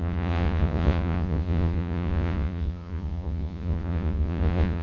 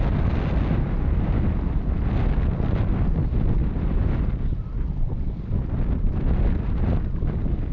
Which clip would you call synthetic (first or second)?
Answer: first